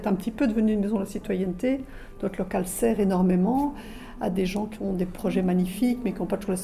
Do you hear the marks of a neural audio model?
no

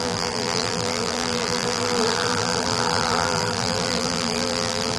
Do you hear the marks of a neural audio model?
yes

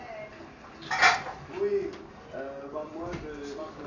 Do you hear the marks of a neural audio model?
no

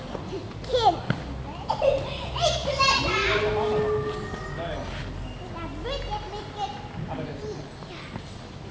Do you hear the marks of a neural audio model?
no